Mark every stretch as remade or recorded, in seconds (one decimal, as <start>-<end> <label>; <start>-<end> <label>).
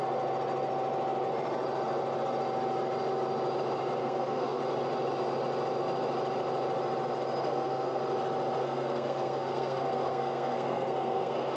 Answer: 0.0-4.0 recorded; 4.0-4.6 remade; 4.6-7.4 recorded; 7.4-8.0 remade; 8.0-8.6 recorded; 8.6-11.6 remade